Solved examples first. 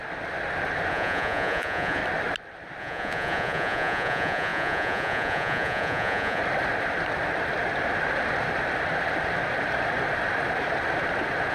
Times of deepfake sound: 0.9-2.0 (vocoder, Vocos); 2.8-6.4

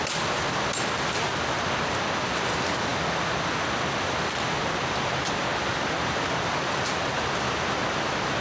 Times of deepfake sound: none

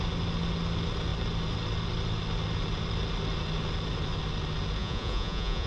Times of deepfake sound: 4.8-5.7 (vocoder, Vocos)

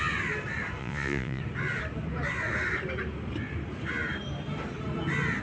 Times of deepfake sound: 0.8-1.4 (vocoder, Vocos)

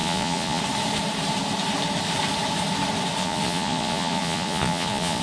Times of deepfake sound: 0.0-0.6 (vocoder, Vocos); 3.2-5.2

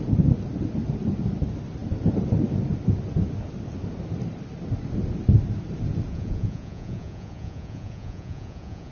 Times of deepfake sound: 6.1-8.9 (vocoder, Vocos)